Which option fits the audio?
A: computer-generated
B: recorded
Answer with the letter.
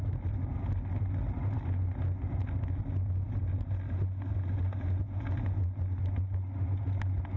B